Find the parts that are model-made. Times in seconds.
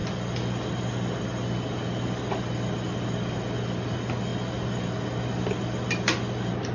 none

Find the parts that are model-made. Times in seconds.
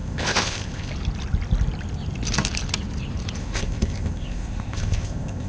0.0-0.9; 3.4-5.5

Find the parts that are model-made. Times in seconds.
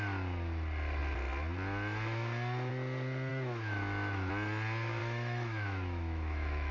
3.3-4.3; 5.0-6.7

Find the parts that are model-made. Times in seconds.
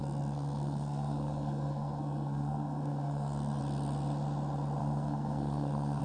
0.0-3.6; 4.8-6.0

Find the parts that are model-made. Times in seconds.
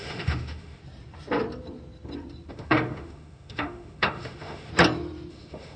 0.0-0.8; 2.5-4.7; 5.3-5.8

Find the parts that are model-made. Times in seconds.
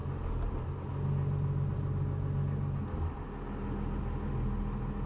none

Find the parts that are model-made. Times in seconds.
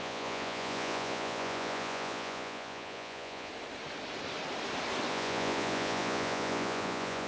0.0-3.5; 5.1-7.3